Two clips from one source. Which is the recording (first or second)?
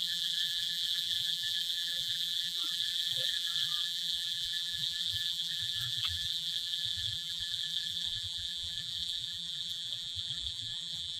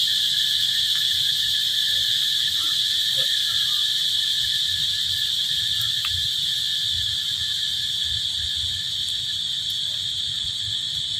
second